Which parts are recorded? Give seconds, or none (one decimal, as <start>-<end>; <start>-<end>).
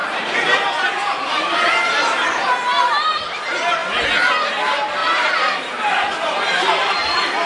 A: 2.9-5.0; 6.0-7.5